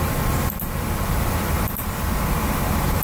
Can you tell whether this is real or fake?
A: fake